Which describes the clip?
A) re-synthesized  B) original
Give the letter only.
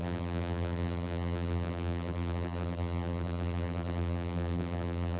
A